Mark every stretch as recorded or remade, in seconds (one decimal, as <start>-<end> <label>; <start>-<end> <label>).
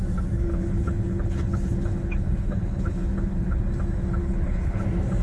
0.0-0.5 recorded; 0.5-3.6 remade; 3.6-4.2 recorded; 4.2-4.8 remade; 4.8-5.2 recorded